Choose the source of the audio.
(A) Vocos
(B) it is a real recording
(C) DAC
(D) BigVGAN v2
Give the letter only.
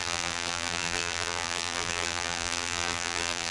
D